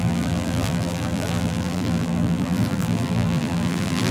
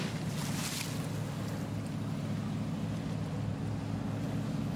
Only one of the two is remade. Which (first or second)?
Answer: first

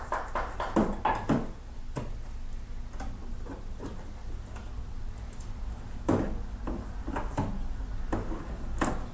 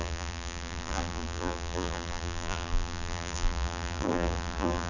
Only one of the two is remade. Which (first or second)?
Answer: second